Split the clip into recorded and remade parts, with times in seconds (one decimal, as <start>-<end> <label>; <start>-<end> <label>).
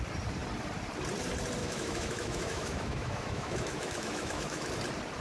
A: 0.0-1.6 recorded; 1.6-4.7 remade; 4.7-5.2 recorded